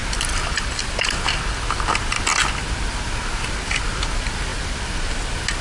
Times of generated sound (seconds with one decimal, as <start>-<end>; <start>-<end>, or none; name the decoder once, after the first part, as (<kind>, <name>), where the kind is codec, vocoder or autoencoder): none